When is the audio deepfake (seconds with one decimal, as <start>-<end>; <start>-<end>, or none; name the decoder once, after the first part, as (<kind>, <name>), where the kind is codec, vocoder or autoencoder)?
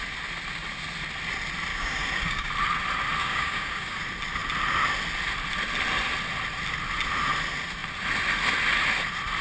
1.7-2.5 (codec, DAC); 3.2-4.0